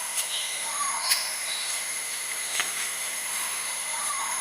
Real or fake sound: fake